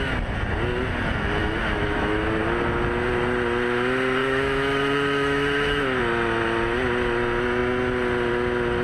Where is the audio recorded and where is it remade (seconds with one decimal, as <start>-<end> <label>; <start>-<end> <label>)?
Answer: 0.0-1.4 recorded; 1.4-2.4 remade; 2.4-4.2 recorded; 4.2-6.0 remade; 6.0-8.8 recorded